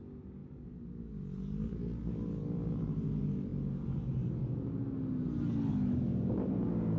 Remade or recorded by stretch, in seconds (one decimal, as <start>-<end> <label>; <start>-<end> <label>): 0.0-7.0 recorded